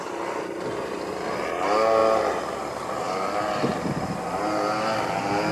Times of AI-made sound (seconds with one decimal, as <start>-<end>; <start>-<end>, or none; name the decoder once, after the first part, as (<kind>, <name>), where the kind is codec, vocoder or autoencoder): none